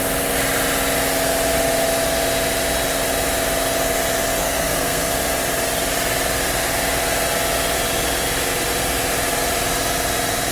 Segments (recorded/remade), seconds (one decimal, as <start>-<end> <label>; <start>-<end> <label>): 0.0-4.4 recorded; 4.4-5.1 remade; 5.1-10.5 recorded